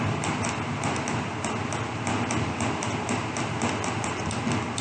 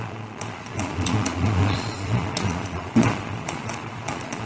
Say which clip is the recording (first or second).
first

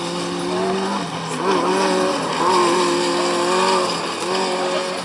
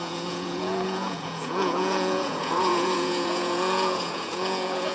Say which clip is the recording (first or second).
first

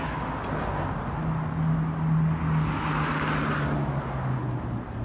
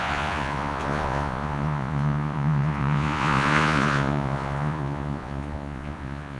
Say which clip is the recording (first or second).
first